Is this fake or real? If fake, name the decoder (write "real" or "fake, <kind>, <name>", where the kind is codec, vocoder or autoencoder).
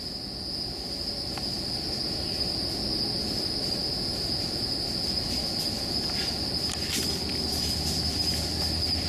real